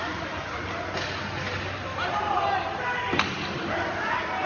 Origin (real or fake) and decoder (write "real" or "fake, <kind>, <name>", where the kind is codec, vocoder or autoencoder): real